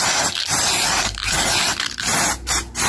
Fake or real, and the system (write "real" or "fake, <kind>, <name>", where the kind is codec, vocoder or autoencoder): real